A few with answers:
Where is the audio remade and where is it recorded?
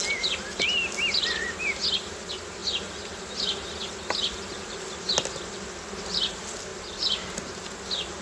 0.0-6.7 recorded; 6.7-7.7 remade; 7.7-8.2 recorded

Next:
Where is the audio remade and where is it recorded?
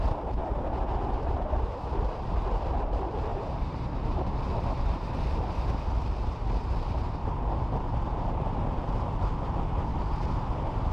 0.0-3.3 recorded; 3.3-5.6 remade; 5.6-7.2 recorded; 7.2-8.8 remade; 8.8-10.9 recorded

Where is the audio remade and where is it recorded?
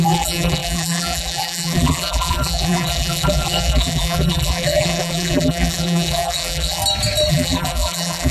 0.0-6.8 remade; 6.8-7.3 recorded; 7.3-8.3 remade